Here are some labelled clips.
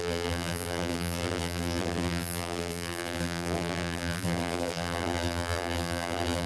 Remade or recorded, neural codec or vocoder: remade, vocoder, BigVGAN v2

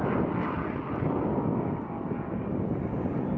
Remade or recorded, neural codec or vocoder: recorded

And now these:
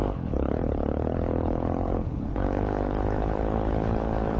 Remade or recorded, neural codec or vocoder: remade, codec, HILCodec